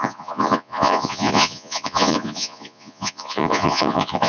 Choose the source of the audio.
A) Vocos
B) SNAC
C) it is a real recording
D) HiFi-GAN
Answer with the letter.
A